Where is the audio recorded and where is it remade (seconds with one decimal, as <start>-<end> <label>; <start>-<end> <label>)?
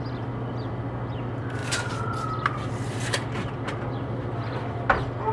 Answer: 0.0-1.6 recorded; 1.6-4.8 remade; 4.8-5.3 recorded